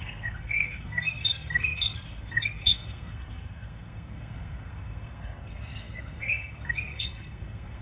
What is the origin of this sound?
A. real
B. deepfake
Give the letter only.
B